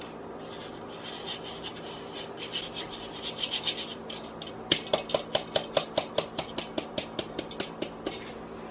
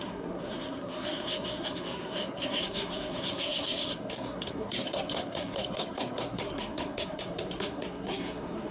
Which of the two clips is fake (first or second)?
second